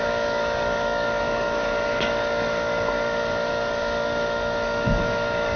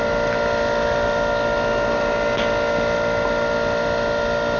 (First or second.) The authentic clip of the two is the second